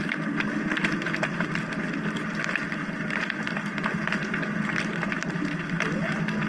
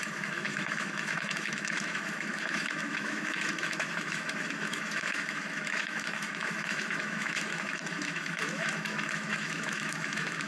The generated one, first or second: second